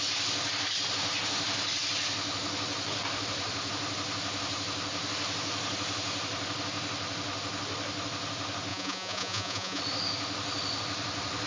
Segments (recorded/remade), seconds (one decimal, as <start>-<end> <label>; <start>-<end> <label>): 0.0-8.7 recorded; 8.7-9.8 remade; 9.8-11.5 recorded